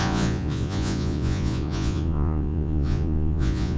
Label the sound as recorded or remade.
remade